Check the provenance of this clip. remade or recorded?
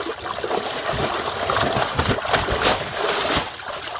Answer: recorded